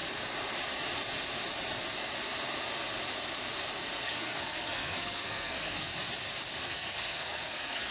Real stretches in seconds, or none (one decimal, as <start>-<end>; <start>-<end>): 0.0-4.0; 5.9-6.6